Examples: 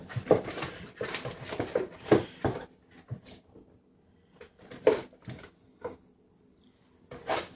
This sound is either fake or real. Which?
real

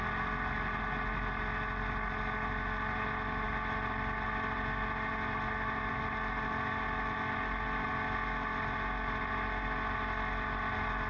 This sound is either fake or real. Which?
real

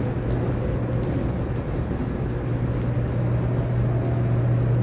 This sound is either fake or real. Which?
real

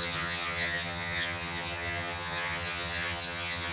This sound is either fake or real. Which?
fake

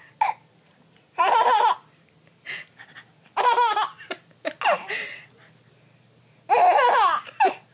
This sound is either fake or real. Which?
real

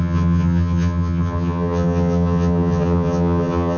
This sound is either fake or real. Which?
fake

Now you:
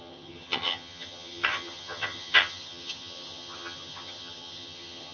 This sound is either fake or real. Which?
fake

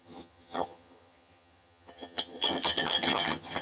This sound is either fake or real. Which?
fake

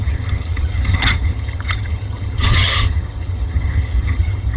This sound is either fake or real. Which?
fake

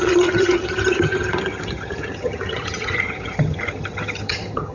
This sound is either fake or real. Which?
fake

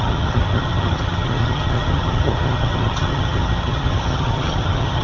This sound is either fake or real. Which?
fake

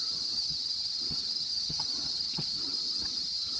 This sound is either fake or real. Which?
fake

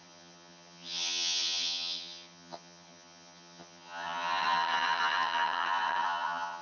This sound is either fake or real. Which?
fake